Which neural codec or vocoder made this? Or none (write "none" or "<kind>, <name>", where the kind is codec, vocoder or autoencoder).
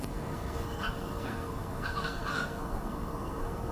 codec, SNAC